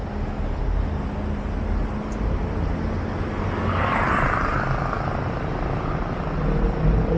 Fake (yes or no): no